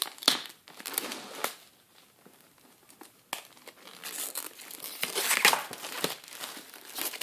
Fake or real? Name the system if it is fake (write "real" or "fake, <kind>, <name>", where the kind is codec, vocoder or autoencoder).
real